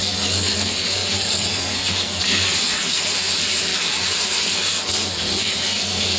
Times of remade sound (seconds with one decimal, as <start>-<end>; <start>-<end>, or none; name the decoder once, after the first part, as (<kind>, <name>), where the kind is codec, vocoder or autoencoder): 0.0-6.2 (codec, SNAC)